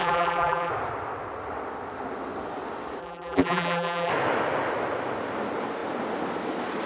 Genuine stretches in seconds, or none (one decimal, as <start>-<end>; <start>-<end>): 0.7-3.0; 4.1-6.9